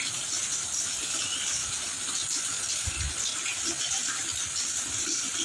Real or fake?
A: real